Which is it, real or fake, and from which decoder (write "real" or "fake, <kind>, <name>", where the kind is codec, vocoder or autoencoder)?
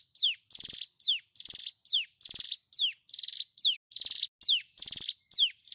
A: real